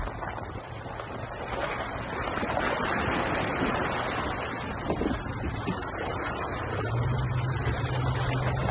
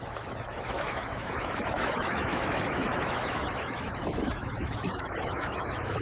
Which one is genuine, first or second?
first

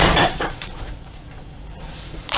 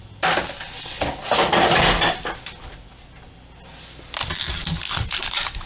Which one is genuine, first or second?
second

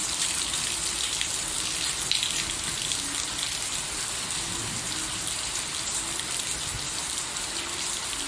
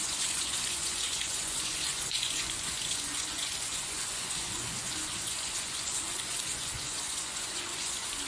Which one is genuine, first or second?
first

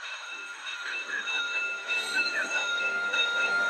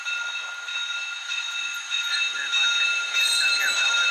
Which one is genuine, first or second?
second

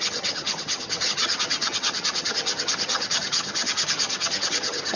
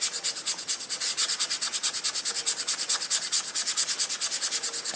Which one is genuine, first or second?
second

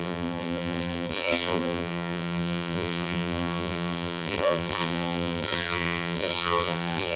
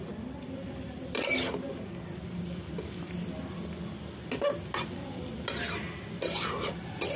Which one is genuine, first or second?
second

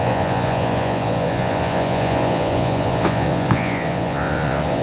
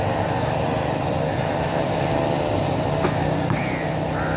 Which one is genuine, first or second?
second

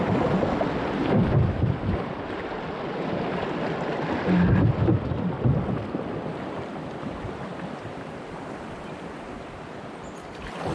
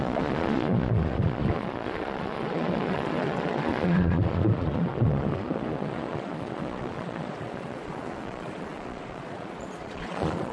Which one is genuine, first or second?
first